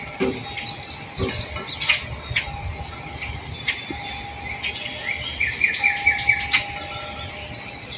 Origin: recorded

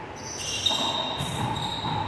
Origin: recorded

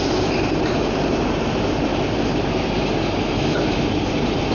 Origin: remade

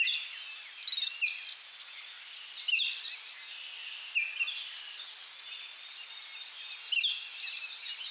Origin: recorded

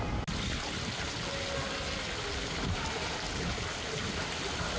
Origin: recorded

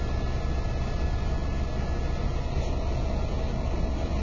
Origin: recorded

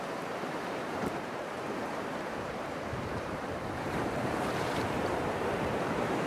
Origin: remade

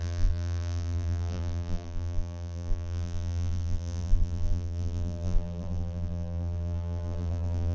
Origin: remade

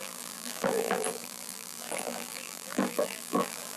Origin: remade